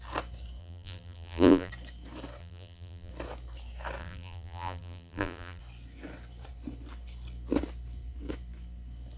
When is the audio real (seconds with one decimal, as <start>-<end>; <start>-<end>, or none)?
0.0-0.6; 1.7-2.4; 3.1-4.0; 5.6-9.2